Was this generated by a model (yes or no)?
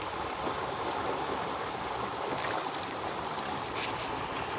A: no